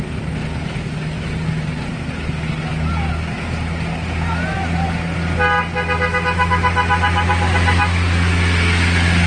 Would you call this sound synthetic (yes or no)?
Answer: no